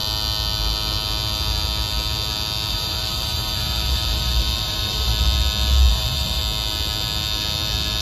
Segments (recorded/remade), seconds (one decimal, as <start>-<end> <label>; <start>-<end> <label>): 0.0-2.7 recorded; 2.7-5.1 remade; 5.1-5.9 recorded; 5.9-6.4 remade; 6.4-8.0 recorded